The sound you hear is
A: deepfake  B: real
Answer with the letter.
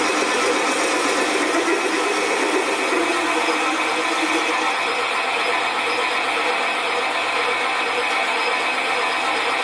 B